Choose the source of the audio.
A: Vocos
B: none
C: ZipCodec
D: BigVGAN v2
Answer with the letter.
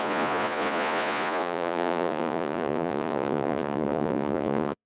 A